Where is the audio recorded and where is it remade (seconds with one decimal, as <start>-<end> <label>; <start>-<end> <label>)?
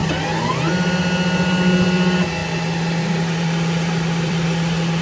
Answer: 0.0-2.4 recorded; 2.4-5.0 remade